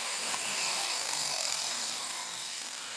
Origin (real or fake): fake